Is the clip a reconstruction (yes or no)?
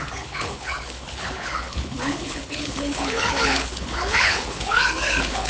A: yes